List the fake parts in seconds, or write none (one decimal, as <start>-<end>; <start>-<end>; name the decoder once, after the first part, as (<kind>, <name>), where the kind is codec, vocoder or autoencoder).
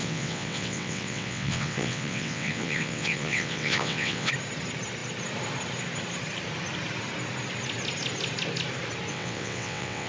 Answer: 0.0-4.3 (vocoder, WaveNeXt); 9.1-10.1